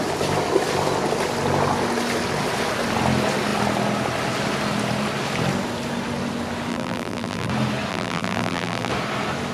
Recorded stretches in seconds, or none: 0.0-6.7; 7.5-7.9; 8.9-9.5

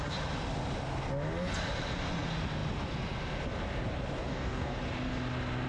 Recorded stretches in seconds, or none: 0.0-4.2; 4.8-5.7

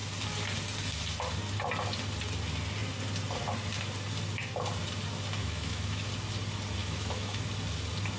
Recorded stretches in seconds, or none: 0.0-5.4; 6.1-6.8; 7.4-8.2

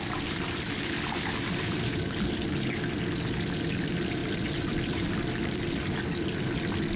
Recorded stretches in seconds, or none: 0.0-4.2; 5.0-7.0

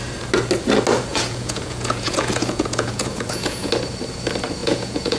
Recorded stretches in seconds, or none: 0.0-1.1; 3.7-4.6

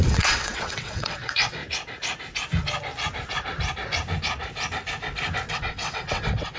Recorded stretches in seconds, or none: 1.6-5.5